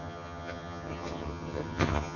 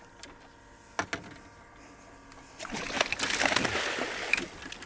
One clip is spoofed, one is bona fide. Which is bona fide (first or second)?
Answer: second